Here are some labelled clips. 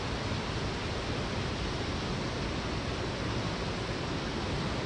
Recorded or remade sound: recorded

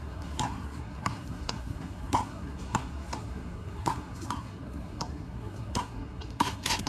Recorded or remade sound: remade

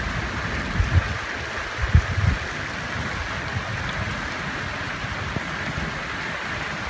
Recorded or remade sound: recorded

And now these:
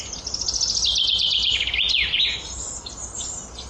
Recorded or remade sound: recorded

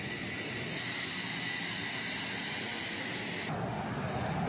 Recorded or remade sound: recorded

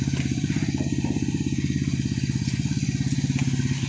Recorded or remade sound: recorded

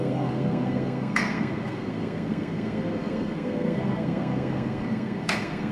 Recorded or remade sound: remade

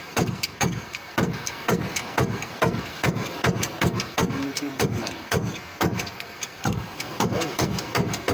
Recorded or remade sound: remade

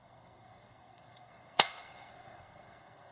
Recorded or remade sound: remade